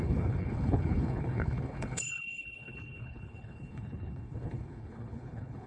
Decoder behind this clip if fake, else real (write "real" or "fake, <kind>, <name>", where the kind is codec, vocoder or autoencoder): fake, codec, HILCodec